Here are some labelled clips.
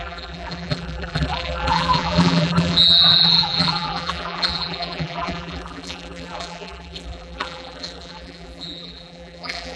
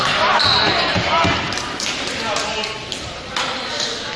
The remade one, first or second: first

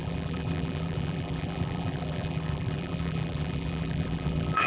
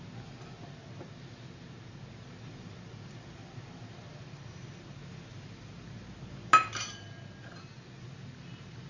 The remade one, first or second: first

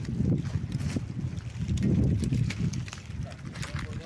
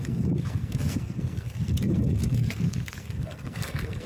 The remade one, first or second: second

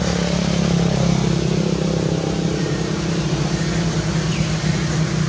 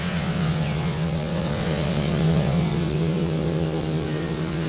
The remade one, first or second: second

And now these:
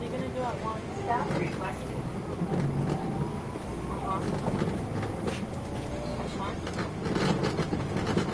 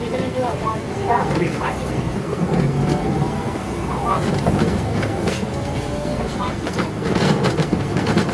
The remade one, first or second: second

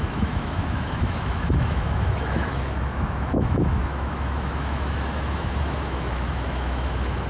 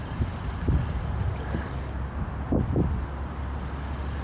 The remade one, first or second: first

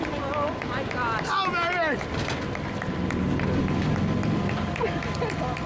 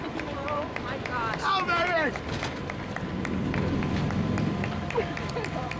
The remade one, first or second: second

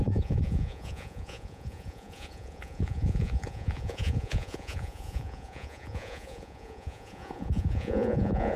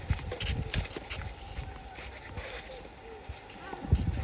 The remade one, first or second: first